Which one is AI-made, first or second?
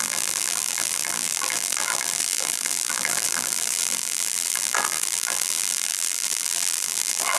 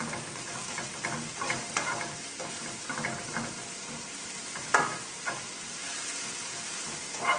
first